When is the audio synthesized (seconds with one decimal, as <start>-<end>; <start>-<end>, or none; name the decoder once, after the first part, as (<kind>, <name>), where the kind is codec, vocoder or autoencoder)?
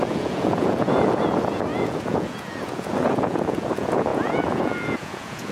0.0-5.5 (vocoder, Vocos)